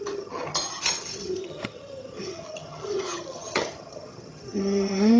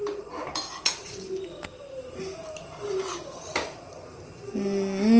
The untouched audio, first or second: second